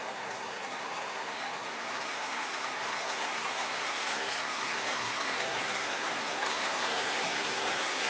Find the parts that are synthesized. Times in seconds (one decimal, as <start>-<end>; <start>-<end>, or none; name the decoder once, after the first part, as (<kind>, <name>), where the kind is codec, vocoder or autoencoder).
0.0-8.1 (codec, SNAC)